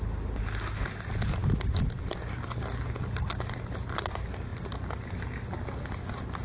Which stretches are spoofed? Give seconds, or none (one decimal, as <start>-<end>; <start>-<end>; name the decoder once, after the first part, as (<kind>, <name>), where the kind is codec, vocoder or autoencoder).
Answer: none